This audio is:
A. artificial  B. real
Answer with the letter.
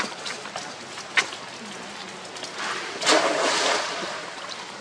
B